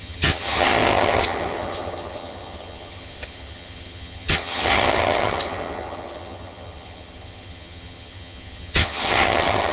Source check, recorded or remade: remade